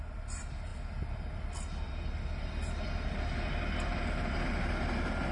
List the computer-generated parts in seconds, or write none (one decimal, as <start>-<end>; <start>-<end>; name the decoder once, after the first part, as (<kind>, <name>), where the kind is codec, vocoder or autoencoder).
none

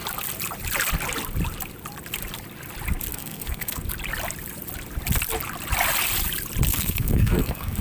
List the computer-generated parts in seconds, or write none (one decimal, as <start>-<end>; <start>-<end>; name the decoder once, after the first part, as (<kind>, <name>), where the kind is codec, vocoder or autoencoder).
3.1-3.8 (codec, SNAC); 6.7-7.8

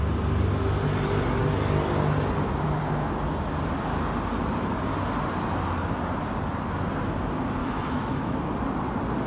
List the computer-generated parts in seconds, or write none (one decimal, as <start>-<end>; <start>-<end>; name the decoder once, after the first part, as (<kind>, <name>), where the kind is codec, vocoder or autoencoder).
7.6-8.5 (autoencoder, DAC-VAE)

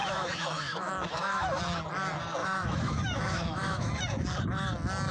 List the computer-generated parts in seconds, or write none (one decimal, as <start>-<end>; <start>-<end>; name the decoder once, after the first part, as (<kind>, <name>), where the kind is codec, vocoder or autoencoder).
0.0-1.6 (autoencoder, DAC-VAE); 2.4-3.9

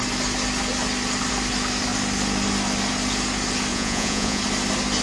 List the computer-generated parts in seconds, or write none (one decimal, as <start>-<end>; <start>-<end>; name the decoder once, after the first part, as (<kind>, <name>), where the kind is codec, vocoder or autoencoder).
3.7-4.4 (vocoder, Vocos)

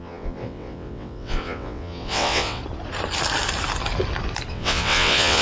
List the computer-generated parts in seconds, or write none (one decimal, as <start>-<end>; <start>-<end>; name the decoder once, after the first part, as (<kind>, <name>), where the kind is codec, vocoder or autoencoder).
0.0-2.6 (vocoder, WaveNeXt); 4.5-5.4

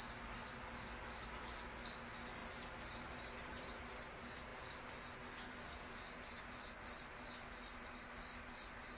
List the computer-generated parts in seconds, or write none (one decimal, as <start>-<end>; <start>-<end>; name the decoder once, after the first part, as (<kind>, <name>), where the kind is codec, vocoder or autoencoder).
2.4-3.8 (vocoder, BigVGAN v2)

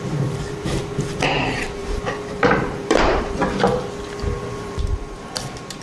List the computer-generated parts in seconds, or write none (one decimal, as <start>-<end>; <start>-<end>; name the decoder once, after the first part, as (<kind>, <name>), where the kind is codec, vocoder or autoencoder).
0.0-3.4 (vocoder, BigVGAN v2); 4.4-5.8